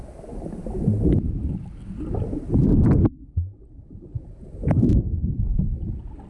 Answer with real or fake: real